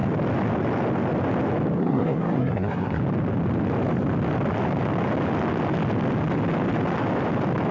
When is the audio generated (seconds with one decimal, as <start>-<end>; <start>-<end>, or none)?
1.8-3.0